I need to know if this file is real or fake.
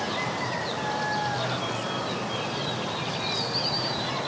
real